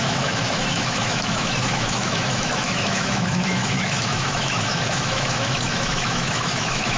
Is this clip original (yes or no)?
no